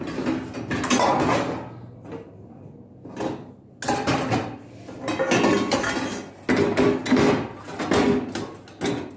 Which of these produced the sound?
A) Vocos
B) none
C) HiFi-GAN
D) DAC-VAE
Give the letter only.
B